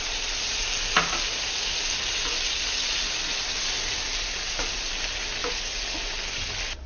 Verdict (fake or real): real